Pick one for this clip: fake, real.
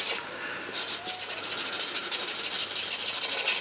real